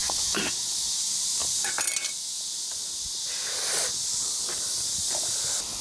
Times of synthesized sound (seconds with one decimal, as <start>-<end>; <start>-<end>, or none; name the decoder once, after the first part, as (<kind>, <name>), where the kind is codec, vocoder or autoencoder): 0.0-0.5 (vocoder, Vocos)